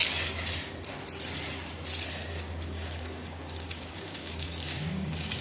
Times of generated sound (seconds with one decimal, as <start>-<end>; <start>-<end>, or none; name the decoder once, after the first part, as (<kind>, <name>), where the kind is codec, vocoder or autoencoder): 2.3-5.4 (codec, DAC)